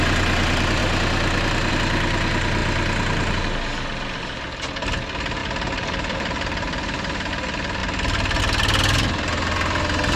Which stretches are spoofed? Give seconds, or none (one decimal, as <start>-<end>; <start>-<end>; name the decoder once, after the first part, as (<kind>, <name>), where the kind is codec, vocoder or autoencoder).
5.4-7.3 (vocoder, BigVGAN v2)